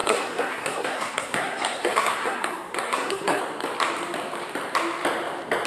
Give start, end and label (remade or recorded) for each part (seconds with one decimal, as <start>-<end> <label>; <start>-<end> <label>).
0.0-3.4 remade; 3.4-5.7 recorded